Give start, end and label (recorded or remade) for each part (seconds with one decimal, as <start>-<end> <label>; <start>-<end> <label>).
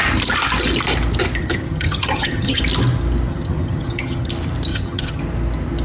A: 0.0-1.4 recorded; 1.4-2.6 remade; 2.6-3.3 recorded; 3.3-4.3 remade; 4.3-4.7 recorded; 4.7-5.2 remade; 5.2-5.8 recorded